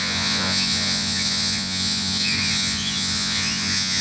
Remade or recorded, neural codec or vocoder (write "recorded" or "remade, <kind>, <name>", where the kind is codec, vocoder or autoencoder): remade, vocoder, Vocos